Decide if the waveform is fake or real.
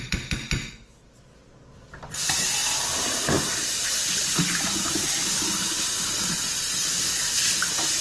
real